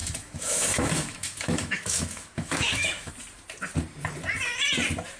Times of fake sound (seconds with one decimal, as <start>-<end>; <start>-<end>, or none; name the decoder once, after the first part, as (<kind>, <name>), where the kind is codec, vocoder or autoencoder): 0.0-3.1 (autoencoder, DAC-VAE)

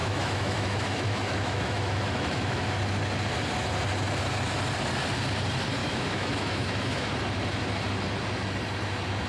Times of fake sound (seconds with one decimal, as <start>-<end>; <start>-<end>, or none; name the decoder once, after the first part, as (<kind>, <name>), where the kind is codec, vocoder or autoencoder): 0.0-2.7 (autoencoder, DAC-VAE); 5.8-7.1

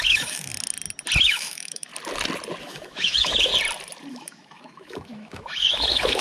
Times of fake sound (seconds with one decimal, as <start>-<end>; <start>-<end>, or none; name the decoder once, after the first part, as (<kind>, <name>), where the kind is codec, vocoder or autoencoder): 0.0-0.5 (autoencoder, DAC-VAE); 1.2-1.9; 2.6-3.5; 4.1-6.2

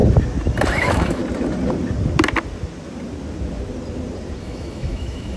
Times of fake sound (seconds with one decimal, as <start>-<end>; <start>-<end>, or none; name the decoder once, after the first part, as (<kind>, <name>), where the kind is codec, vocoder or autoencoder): 0.7-1.2 (autoencoder, DAC-VAE); 4.4-5.4

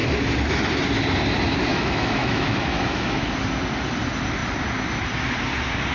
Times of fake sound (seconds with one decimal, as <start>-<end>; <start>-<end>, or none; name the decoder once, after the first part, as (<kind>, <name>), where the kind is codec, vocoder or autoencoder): 1.7-3.3 (autoencoder, DAC-VAE)